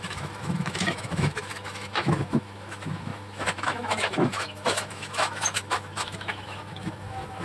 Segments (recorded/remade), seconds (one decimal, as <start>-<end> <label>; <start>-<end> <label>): 0.0-7.4 remade